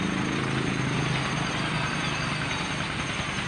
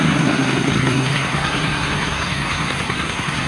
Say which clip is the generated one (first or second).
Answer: second